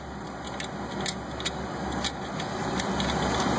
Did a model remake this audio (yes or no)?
no